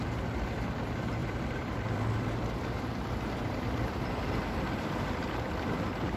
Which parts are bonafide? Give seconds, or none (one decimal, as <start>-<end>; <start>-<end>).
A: 0.0-1.2; 4.9-6.2